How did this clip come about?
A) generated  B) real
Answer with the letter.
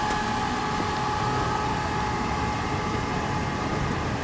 B